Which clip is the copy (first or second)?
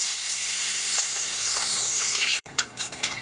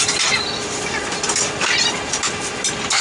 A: first